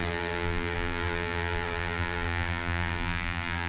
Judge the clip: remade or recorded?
remade